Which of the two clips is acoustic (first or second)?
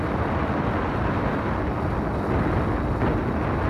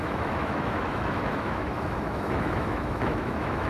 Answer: first